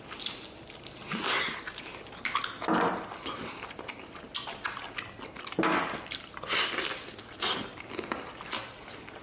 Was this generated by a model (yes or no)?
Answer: no